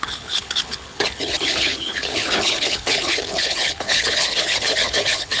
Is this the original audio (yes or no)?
no